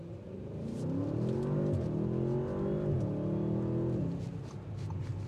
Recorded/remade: recorded